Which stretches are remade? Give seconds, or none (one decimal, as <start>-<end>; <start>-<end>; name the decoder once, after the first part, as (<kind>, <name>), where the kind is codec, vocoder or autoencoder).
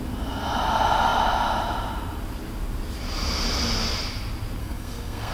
4.6-5.3 (codec, SNAC)